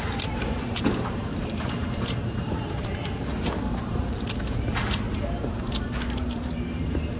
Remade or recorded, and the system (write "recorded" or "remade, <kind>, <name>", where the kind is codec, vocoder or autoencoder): remade, vocoder, BigVGAN v2